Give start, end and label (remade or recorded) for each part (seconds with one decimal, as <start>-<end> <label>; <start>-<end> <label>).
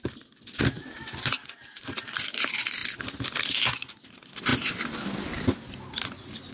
0.0-6.5 recorded